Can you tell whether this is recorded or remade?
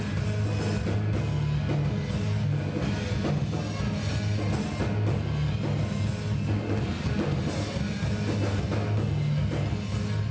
recorded